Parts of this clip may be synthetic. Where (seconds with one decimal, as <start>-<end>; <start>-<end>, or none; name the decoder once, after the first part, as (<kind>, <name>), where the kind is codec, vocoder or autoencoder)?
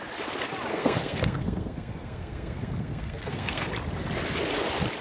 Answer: 0.7-3.7 (codec, SNAC)